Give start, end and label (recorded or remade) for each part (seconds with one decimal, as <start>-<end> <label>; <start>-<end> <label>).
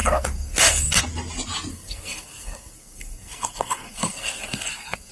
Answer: 0.0-1.0 remade; 1.0-1.7 recorded; 1.7-5.1 remade